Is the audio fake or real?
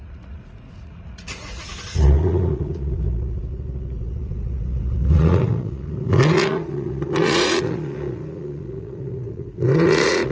fake